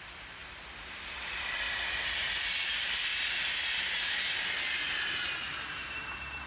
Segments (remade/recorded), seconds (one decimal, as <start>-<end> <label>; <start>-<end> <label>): 0.0-3.1 recorded; 3.1-4.3 remade; 4.3-5.5 recorded; 5.5-6.5 remade